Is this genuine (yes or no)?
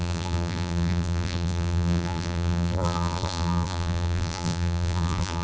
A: no